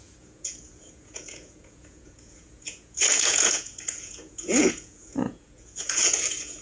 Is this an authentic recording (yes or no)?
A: no